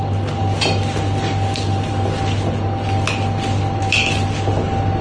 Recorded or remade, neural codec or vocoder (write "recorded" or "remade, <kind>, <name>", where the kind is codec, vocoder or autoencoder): recorded